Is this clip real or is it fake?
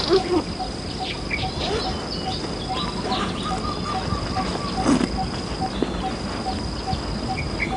real